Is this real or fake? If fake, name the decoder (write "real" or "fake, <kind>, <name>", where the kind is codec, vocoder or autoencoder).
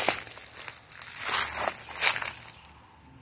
real